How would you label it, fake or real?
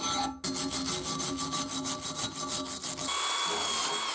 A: real